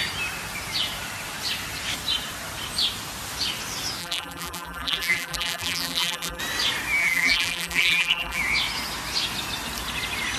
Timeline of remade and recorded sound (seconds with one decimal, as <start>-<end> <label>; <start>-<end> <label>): 0.0-4.0 recorded; 4.0-6.4 remade; 6.4-7.0 recorded; 7.0-8.4 remade; 8.4-10.4 recorded